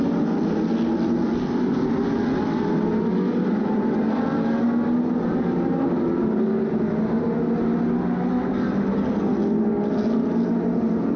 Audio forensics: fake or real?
real